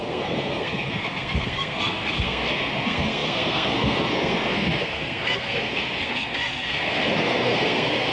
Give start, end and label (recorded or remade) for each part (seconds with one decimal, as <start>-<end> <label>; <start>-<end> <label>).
0.0-8.1 remade